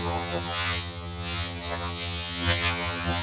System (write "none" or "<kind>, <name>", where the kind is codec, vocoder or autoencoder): vocoder, HiFi-GAN